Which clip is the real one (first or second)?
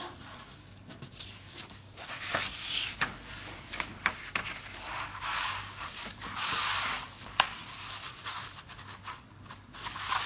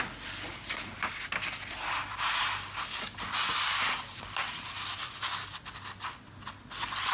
second